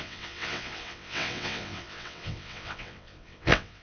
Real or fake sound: fake